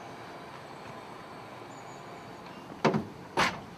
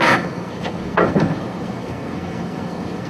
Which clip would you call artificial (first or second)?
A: second